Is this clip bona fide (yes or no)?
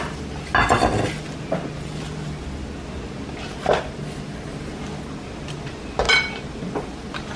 yes